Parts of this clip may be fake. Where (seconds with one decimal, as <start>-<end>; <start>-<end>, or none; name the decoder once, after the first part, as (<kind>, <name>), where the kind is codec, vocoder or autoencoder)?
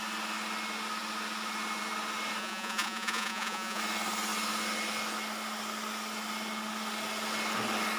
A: 2.4-3.8 (vocoder, Vocos)